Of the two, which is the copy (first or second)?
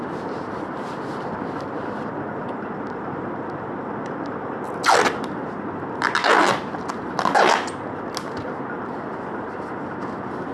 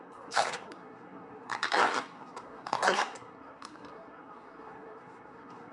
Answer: second